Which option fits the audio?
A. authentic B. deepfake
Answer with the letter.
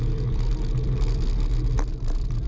A